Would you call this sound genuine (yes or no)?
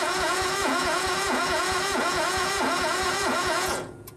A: no